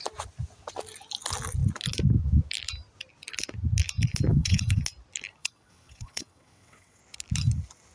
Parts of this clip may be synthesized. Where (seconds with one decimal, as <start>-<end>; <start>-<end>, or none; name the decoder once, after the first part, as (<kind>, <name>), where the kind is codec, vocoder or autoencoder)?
4.3-4.8 (vocoder, WaveNeXt); 5.4-7.0